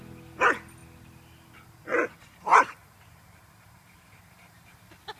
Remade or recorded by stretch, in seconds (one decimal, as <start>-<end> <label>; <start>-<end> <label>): 0.0-2.5 recorded; 2.5-4.8 remade; 4.8-5.2 recorded